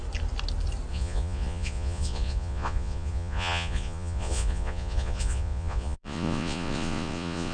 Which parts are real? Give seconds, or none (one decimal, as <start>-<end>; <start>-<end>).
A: 0.0-0.9

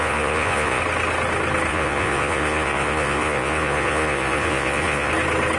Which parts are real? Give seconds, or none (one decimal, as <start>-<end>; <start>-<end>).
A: 0.8-1.7; 5.1-5.6

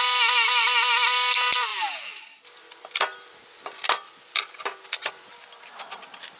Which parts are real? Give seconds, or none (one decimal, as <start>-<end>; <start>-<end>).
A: 0.0-6.4

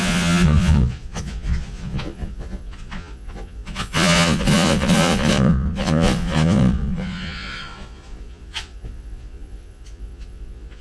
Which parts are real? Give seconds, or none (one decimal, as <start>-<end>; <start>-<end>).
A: none